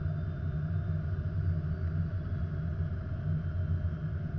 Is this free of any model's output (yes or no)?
yes